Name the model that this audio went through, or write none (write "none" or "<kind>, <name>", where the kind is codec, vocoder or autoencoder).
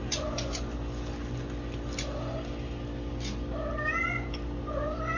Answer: none